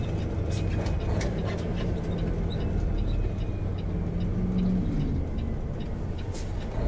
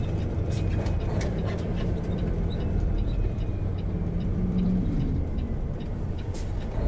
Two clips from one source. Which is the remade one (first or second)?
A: second